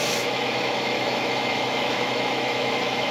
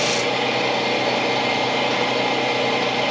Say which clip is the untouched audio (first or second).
second